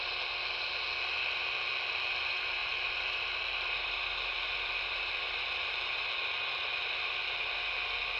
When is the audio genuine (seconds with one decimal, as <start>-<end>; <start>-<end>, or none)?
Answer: 0.0-2.6; 5.2-6.7; 7.5-8.2